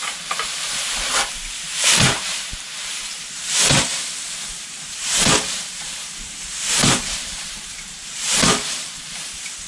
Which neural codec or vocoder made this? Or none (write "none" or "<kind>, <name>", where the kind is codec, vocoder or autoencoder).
vocoder, BigVGAN v2